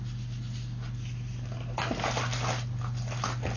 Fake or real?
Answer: fake